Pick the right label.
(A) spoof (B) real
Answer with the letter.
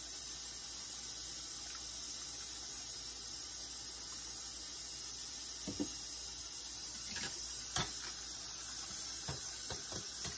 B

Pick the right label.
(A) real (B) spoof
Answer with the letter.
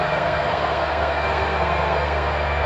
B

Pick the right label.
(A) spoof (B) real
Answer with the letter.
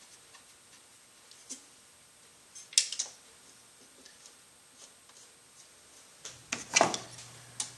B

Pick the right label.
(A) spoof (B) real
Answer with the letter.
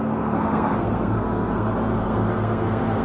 A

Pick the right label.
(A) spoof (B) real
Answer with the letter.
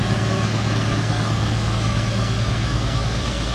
A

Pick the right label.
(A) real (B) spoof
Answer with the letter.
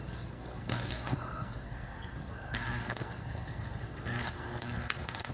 B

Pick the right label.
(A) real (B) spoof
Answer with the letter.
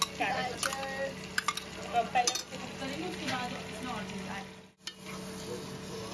A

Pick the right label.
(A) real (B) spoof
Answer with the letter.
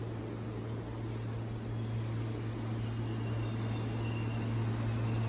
A